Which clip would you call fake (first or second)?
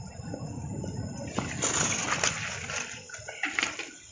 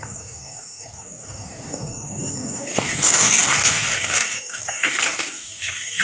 second